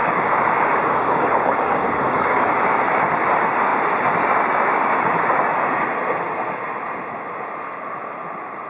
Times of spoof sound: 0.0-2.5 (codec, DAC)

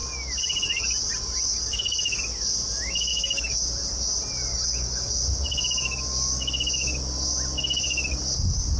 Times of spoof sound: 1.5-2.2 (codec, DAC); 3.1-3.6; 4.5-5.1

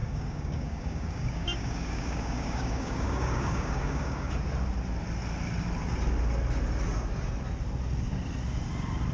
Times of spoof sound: 0.0-4.3 (codec, DAC)

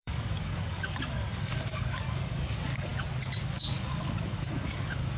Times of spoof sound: 0.0-2.9 (codec, DAC); 3.4-5.2